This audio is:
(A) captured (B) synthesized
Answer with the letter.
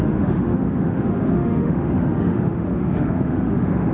B